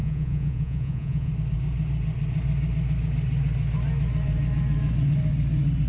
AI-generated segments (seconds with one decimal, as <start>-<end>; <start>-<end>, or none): 0.0-1.3